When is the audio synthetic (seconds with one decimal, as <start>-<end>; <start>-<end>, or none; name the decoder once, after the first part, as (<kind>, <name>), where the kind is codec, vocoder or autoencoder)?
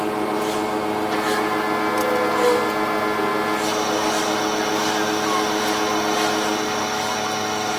none